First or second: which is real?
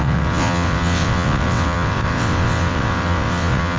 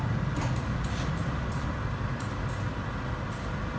second